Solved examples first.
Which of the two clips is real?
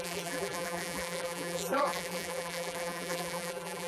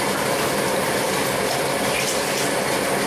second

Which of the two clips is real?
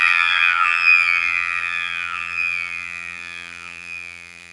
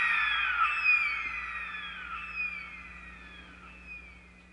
second